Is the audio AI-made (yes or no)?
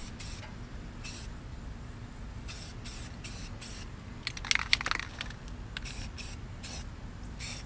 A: no